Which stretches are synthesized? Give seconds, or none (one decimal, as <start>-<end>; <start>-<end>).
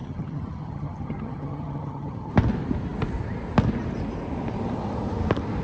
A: 0.0-2.3